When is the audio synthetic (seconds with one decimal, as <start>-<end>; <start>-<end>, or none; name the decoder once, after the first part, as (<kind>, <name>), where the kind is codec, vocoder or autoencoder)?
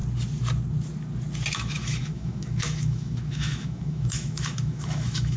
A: 1.5-5.4 (autoencoder, DAC-VAE)